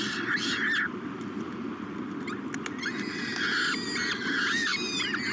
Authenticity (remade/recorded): recorded